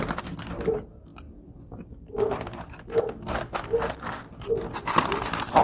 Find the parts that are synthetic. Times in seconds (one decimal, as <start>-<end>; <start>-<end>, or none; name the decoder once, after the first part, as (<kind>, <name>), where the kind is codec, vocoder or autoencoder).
none